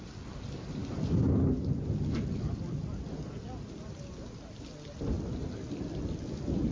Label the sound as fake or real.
real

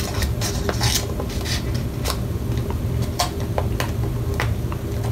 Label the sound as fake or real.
real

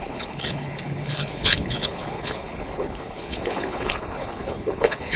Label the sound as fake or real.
fake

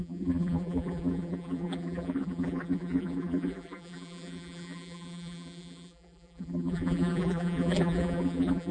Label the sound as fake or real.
fake